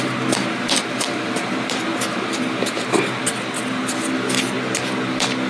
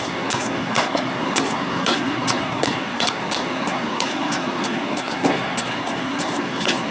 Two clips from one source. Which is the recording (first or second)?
first